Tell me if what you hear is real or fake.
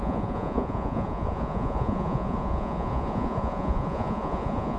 fake